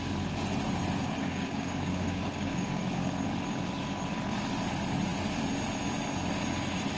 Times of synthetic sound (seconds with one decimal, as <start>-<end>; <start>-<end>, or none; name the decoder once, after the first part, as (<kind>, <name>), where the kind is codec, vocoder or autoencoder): 1.2-3.1 (codec, DAC)